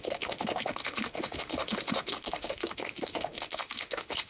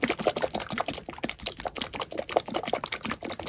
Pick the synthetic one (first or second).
first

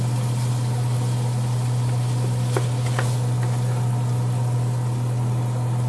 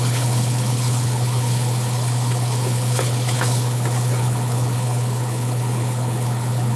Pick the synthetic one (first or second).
second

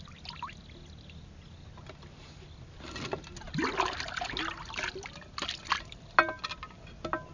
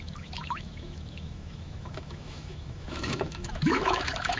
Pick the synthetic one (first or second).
second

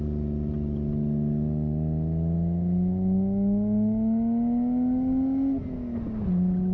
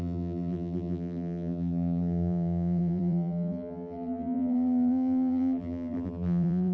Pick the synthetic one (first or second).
second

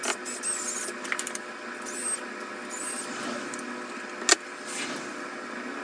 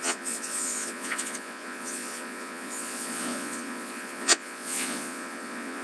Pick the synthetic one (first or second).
second